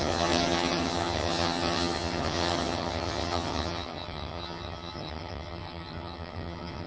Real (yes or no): no